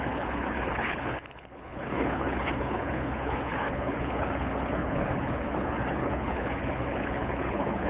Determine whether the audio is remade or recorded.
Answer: remade